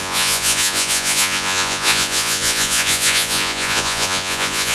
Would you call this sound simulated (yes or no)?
yes